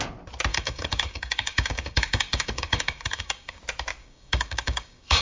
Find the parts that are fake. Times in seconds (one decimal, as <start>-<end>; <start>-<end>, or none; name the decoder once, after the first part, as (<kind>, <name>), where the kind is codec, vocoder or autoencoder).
0.5-3.6 (codec, DAC); 4.0-5.2